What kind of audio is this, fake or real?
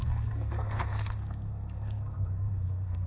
fake